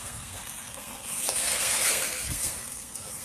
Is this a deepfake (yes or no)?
yes